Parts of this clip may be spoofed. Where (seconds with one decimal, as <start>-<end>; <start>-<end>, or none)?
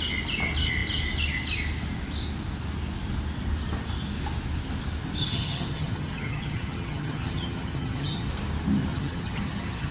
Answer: 5.2-8.3; 8.9-9.9